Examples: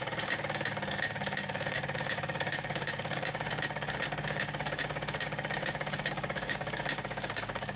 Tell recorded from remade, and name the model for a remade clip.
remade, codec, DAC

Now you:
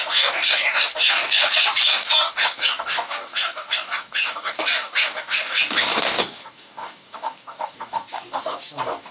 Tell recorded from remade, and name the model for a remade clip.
remade, codec, DAC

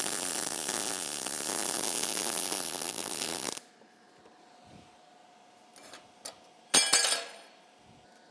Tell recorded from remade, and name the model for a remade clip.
recorded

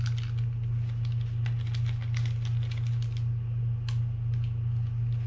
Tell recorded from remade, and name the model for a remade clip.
recorded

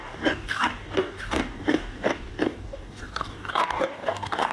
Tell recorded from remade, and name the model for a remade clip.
remade, codec, DAC